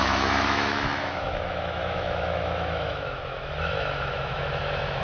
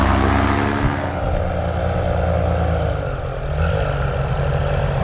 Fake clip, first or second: first